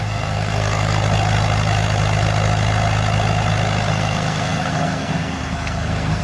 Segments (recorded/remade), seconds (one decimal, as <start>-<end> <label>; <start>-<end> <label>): 0.0-1.0 remade; 1.0-3.9 recorded; 3.9-6.2 remade